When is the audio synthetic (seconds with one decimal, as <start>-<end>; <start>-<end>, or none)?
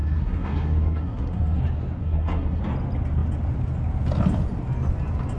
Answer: 0.0-1.6; 2.0-2.6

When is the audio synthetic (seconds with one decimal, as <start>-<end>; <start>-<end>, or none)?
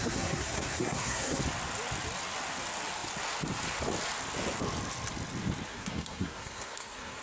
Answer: 0.0-1.4; 5.7-7.2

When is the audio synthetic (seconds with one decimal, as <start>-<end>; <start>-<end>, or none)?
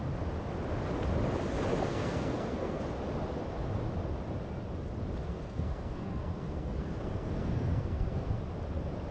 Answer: 1.9-2.8; 5.2-8.4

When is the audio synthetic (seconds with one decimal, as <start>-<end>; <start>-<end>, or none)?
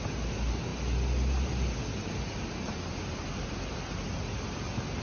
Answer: none